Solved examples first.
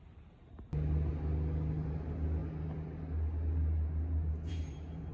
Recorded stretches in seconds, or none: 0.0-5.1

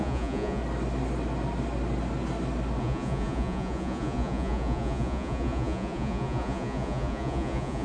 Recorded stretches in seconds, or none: 0.6-2.8

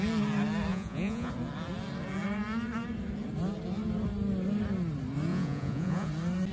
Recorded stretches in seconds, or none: 0.0-0.7; 1.3-5.3; 6.1-6.5

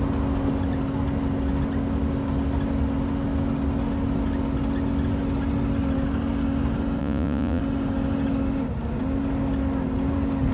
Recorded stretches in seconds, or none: 0.0-7.0; 7.6-10.5